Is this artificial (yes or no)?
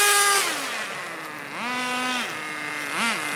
no